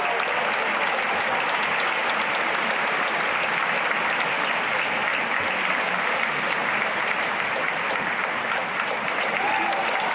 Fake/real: real